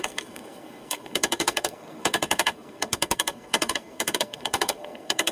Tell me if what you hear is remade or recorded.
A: remade